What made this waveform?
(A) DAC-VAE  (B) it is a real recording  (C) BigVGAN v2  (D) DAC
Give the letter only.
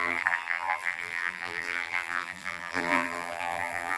C